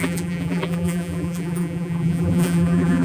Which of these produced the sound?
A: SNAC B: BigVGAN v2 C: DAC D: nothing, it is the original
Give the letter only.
B